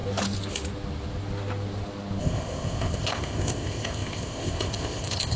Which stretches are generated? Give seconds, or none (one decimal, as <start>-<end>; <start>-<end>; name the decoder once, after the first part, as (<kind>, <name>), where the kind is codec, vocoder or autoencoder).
2.2-5.4 (codec, ZipCodec)

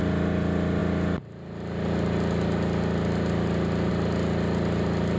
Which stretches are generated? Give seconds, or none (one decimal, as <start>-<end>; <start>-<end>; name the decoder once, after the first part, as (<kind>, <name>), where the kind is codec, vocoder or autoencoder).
none